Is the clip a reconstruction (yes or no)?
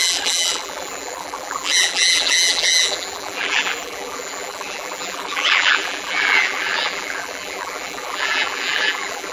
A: yes